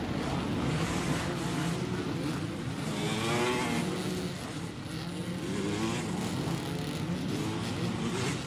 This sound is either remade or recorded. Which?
recorded